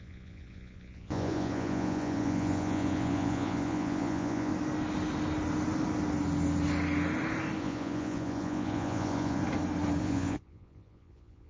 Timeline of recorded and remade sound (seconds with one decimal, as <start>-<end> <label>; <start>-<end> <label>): 0.0-4.5 remade; 4.5-7.6 recorded; 7.6-9.4 remade; 9.4-10.0 recorded; 10.0-11.5 remade